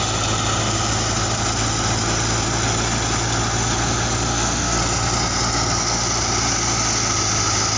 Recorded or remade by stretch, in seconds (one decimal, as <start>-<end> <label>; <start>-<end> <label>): 0.0-4.3 recorded; 4.3-4.8 remade; 4.8-7.8 recorded